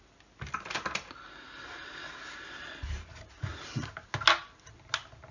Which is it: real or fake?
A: real